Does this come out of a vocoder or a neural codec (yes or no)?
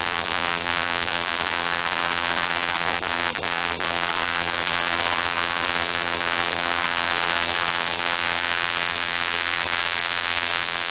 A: yes